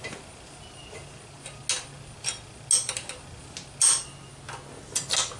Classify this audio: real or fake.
real